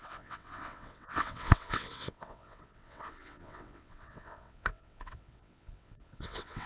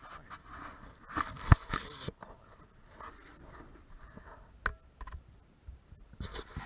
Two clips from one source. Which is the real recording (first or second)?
second